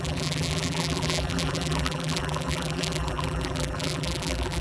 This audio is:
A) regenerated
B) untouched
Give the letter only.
A